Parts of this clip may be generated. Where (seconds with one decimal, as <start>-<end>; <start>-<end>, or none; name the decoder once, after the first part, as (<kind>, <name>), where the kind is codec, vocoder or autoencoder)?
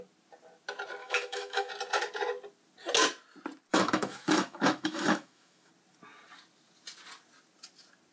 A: 1.0-1.7 (autoencoder, DAC-VAE); 3.7-5.7